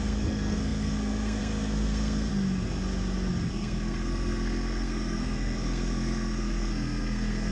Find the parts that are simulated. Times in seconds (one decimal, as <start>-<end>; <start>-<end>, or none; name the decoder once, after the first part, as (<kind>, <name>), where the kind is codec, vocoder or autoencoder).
0.0-2.3 (codec, SNAC); 3.5-7.5